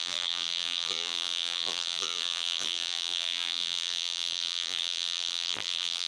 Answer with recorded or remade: remade